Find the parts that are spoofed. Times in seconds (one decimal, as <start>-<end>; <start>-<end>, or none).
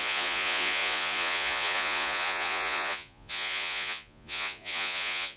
0.0-5.4